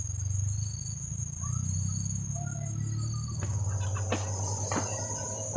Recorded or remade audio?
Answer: recorded